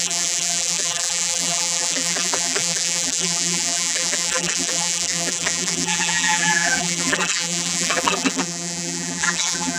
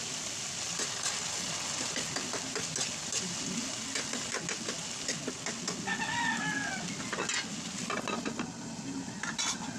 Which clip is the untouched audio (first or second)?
second